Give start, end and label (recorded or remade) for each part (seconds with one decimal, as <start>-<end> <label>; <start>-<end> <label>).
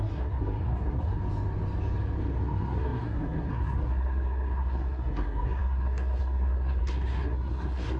0.0-1.2 remade; 1.2-2.2 recorded; 2.2-8.0 remade